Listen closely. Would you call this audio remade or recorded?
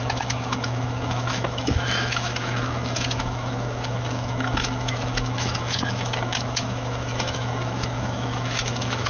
remade